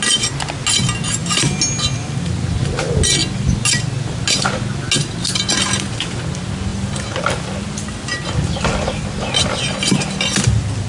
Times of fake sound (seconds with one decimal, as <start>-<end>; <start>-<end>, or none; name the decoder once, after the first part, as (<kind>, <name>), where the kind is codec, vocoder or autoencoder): none

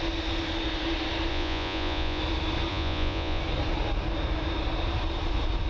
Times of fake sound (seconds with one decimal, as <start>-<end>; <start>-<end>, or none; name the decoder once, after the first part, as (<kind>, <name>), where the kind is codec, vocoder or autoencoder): 1.3-2.2 (vocoder, Vocos); 2.7-3.4

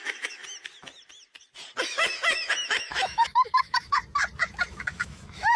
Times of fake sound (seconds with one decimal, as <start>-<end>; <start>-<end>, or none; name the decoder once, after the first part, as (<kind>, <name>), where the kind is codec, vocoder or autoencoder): 0.0-0.4 (autoencoder, DAC-VAE); 1.8-4.0; 4.7-5.6

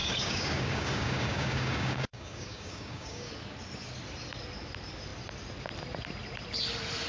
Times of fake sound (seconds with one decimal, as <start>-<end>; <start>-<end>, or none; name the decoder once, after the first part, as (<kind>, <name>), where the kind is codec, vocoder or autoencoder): 0.0-3.3 (codec, DAC)

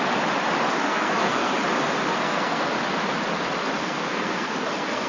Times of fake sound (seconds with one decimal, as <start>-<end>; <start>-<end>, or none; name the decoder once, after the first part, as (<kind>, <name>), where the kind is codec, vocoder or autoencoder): 0.8-1.5 (codec, SNAC); 2.1-2.7; 3.8-5.1

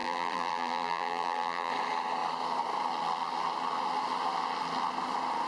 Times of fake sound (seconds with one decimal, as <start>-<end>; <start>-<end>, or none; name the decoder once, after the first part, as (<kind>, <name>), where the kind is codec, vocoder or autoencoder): 0.0-1.7 (vocoder, BigVGAN v2)

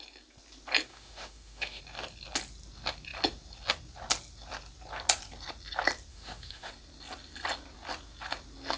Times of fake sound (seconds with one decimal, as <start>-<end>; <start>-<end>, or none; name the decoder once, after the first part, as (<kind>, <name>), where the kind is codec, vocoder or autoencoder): 0.9-1.8 (autoencoder, DAC-VAE); 6.1-6.7